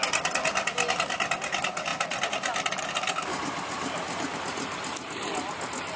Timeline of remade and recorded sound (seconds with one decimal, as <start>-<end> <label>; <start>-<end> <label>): 0.0-6.0 recorded